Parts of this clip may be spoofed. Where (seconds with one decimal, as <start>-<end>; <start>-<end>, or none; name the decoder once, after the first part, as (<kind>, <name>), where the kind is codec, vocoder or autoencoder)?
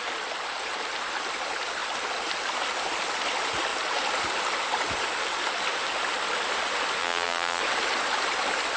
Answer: 7.0-7.6 (vocoder, BigVGAN v2)